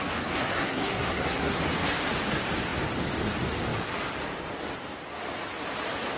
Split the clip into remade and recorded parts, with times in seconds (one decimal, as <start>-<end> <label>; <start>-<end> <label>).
0.0-0.4 recorded; 0.4-1.6 remade; 1.6-6.2 recorded